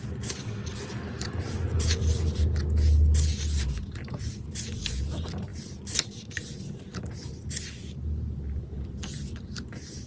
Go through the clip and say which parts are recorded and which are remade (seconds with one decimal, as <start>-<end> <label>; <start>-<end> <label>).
0.0-10.1 recorded